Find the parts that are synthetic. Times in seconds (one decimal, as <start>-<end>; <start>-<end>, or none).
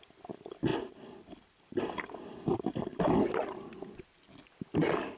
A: 0.0-0.7; 1.8-2.9